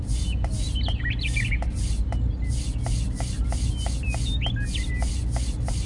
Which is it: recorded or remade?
recorded